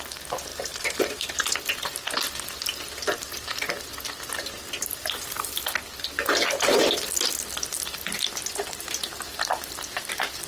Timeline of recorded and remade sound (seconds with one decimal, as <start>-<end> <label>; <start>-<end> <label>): 0.0-0.5 recorded; 0.5-1.3 remade; 1.3-10.5 recorded